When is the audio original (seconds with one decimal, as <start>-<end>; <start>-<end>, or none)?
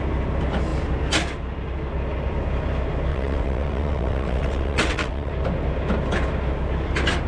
0.0-3.1; 5.3-7.3